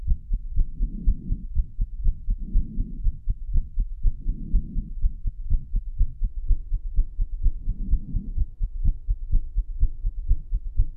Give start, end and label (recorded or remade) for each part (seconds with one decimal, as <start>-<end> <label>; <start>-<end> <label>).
0.0-6.3 recorded; 6.3-11.0 remade